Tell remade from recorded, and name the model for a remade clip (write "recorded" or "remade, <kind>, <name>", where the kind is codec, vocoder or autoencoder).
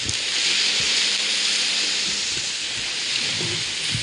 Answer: recorded